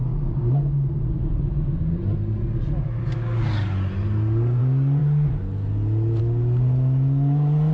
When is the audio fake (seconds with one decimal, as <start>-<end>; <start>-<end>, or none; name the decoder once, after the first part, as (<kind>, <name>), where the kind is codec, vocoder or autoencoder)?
none